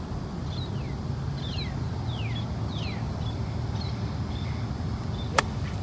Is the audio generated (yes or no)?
no